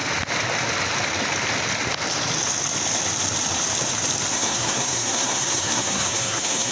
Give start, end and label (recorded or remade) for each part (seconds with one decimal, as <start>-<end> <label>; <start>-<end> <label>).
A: 0.0-4.3 recorded; 4.3-6.7 remade

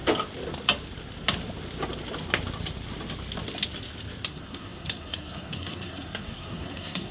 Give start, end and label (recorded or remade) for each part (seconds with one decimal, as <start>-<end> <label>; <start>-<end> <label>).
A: 0.0-4.3 recorded; 4.3-7.1 remade